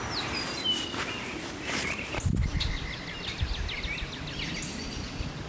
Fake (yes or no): no